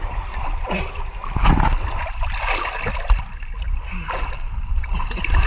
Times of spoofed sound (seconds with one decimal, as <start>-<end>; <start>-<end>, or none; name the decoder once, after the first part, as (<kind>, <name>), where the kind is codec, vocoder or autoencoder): none